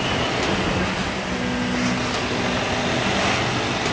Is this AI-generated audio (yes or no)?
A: no